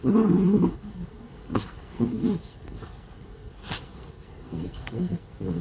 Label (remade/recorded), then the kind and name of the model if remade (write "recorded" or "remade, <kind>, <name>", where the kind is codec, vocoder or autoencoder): remade, codec, SNAC